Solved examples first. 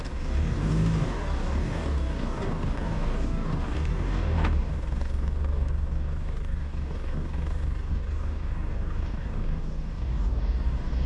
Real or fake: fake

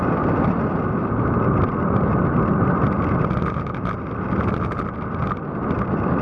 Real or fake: real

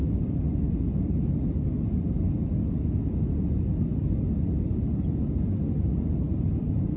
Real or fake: real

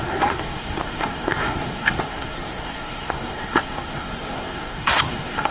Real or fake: fake